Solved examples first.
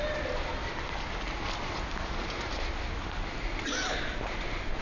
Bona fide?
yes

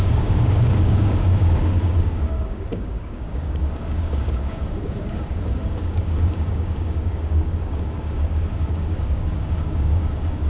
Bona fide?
no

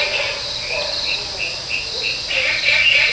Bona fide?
yes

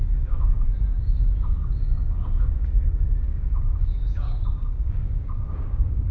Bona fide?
no